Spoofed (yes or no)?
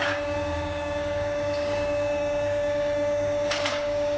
yes